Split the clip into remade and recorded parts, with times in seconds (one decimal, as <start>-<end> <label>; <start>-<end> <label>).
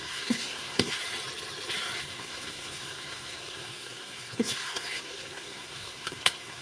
0.0-1.0 remade; 1.0-2.0 recorded; 2.0-6.6 remade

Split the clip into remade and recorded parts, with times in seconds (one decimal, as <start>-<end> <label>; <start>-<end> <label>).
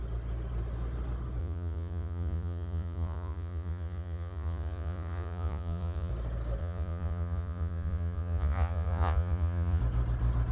0.0-1.4 recorded; 1.4-6.1 remade; 6.1-6.6 recorded; 6.6-9.8 remade; 9.8-10.5 recorded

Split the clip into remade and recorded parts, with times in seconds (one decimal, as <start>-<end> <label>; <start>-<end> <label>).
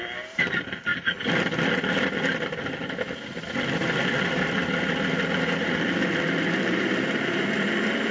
0.0-8.1 remade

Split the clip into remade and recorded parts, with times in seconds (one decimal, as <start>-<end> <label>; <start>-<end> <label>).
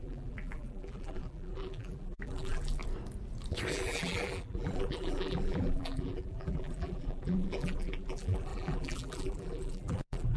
0.0-2.8 remade; 2.8-3.7 recorded; 3.7-10.4 remade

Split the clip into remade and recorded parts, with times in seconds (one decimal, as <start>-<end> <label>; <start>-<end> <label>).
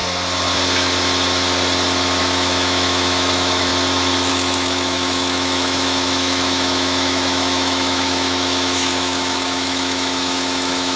0.0-2.2 recorded; 2.2-3.7 remade; 3.7-4.3 recorded; 4.3-11.0 remade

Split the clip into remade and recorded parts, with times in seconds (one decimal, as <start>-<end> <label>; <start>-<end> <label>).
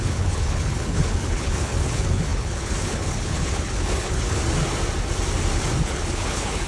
0.0-4.4 remade; 4.4-5.8 recorded; 5.8-6.7 remade